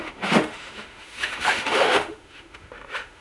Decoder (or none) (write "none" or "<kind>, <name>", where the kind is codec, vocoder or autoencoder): autoencoder, DAC-VAE